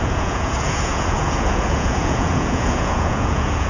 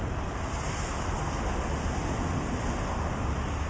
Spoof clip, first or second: first